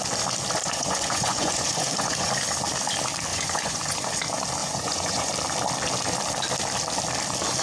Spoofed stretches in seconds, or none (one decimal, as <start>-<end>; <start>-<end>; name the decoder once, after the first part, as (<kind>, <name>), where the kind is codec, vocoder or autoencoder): 0.6-2.3 (vocoder, Vocos); 3.3-4.1; 4.6-5.3